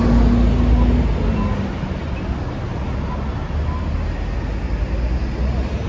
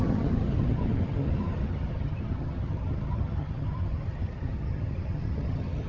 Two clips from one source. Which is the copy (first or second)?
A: second